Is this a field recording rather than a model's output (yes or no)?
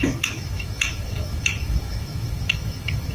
no